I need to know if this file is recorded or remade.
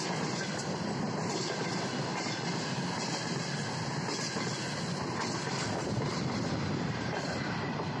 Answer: recorded